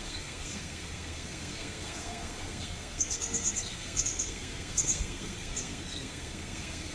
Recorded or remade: remade